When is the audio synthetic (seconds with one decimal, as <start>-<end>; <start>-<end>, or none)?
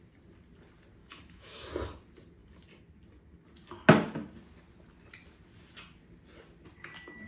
1.0-1.7